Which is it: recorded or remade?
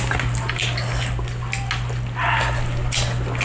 recorded